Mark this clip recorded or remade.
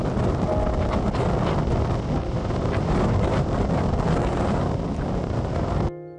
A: recorded